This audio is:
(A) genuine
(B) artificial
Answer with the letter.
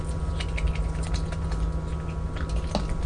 A